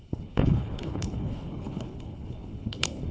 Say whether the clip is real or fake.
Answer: fake